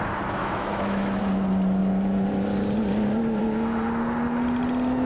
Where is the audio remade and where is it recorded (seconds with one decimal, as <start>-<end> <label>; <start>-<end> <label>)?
0.0-0.4 recorded; 0.4-1.2 remade; 1.2-5.1 recorded